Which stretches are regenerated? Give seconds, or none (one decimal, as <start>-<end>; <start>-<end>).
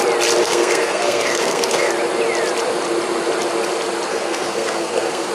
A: 0.4-1.9; 4.1-5.3